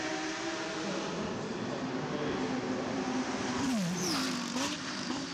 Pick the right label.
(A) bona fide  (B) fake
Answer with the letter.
A